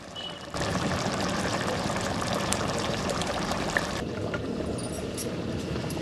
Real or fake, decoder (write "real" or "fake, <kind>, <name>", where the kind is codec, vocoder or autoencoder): fake, vocoder, BigVGAN v2